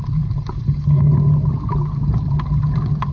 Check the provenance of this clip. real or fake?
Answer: real